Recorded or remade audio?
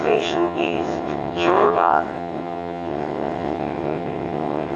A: remade